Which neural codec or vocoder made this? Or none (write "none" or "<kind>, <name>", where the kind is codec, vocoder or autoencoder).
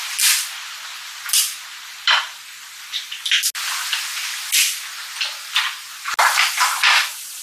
none